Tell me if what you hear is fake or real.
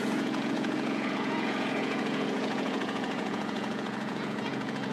fake